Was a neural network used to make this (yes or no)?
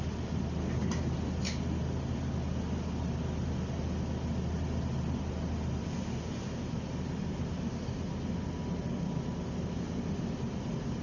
no